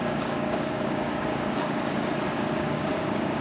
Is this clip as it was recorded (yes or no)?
no